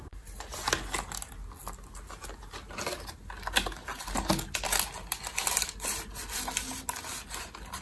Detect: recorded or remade recorded